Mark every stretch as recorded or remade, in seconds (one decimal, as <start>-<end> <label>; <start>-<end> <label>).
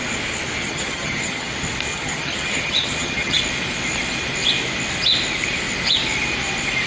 0.0-0.6 recorded; 0.6-1.5 remade; 1.5-1.9 recorded; 1.9-3.4 remade; 3.4-6.9 recorded